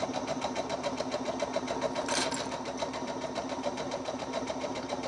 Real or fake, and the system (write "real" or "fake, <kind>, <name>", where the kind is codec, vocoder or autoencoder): fake, vocoder, BigVGAN v2